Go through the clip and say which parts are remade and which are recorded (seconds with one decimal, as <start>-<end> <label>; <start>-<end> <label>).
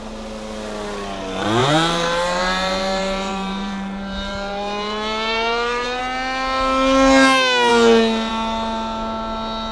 0.0-1.6 recorded; 1.6-6.0 remade; 6.0-9.7 recorded